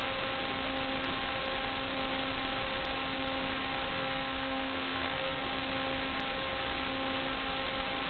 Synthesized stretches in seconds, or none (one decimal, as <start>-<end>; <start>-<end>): 3.9-5.4